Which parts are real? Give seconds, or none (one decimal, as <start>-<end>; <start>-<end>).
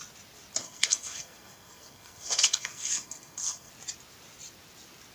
0.0-0.6; 3.7-5.1